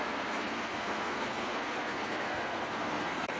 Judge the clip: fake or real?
fake